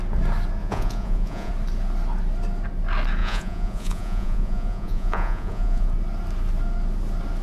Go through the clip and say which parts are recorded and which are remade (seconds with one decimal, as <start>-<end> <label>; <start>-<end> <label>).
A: 0.0-0.6 recorded; 0.6-1.5 remade; 1.5-3.2 recorded; 3.2-5.9 remade; 5.9-7.4 recorded